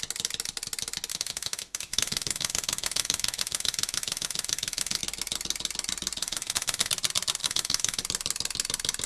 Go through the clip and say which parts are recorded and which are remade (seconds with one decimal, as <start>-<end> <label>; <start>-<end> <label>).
0.0-1.1 recorded; 1.1-5.0 remade; 5.0-6.2 recorded; 6.2-6.9 remade; 6.9-7.4 recorded; 7.4-8.0 remade; 8.0-9.1 recorded